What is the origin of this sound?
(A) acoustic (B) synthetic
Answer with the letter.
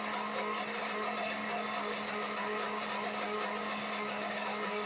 A